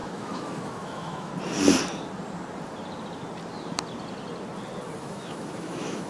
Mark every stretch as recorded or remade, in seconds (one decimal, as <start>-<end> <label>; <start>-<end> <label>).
0.0-1.3 remade; 1.3-5.0 recorded; 5.0-6.1 remade